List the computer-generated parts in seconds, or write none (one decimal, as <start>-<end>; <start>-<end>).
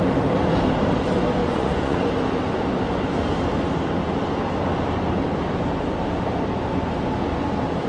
1.4-2.1